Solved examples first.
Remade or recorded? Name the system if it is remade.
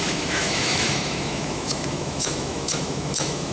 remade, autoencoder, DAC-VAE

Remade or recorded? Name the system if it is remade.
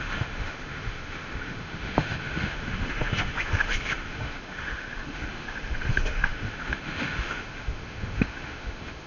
remade, autoencoder, DAC-VAE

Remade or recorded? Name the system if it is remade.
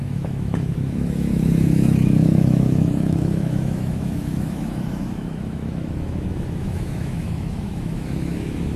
remade, autoencoder, DAC-VAE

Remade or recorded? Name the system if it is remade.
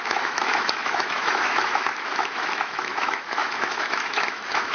remade, autoencoder, DAC-VAE